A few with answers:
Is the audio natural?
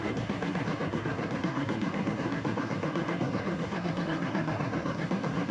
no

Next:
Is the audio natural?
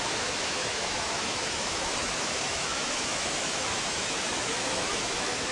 no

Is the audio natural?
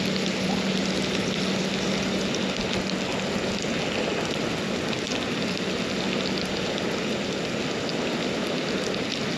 yes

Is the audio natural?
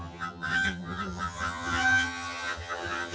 no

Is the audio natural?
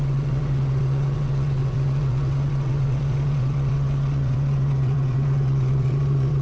no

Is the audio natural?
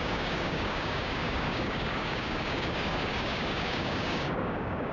no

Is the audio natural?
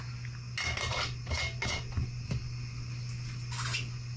yes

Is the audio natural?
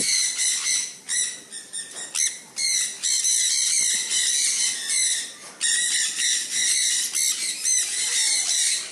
yes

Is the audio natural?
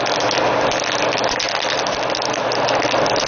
yes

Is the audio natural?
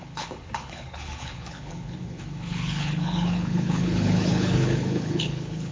no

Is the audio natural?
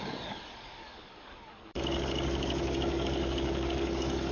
no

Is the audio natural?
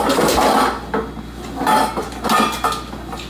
yes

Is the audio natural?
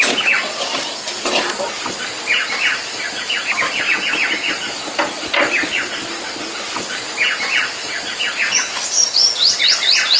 yes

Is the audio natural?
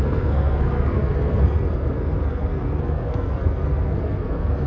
no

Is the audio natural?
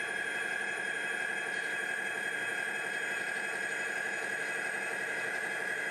no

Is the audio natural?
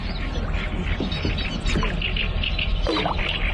yes